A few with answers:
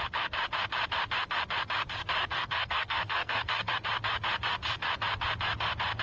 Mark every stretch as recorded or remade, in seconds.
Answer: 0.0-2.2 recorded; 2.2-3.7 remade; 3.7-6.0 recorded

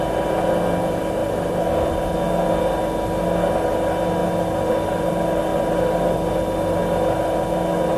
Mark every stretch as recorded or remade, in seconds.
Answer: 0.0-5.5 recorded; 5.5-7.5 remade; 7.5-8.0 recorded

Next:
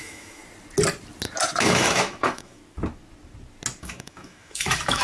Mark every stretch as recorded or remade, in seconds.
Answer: 0.0-0.4 remade; 0.4-1.6 recorded; 1.6-2.6 remade; 2.6-3.8 recorded; 3.8-5.0 remade